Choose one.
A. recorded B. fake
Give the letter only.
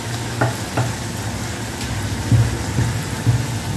A